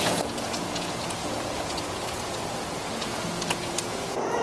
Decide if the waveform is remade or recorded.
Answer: remade